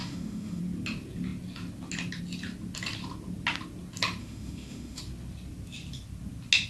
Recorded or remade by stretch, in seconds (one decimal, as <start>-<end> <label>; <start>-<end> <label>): 0.0-0.6 remade; 0.6-4.2 recorded; 4.2-5.0 remade; 5.0-6.7 recorded